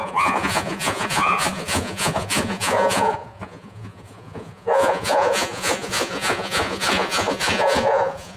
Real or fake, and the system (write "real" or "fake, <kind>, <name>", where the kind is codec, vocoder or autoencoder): fake, vocoder, Vocos